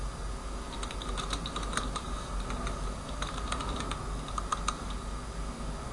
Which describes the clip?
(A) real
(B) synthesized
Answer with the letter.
A